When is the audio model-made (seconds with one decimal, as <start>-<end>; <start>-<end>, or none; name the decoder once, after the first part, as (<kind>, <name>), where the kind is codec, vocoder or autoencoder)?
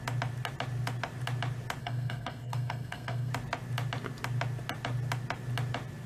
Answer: 1.8-3.3 (codec, SNAC)